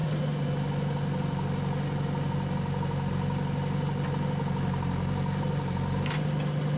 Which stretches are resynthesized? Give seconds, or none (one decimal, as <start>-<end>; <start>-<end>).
none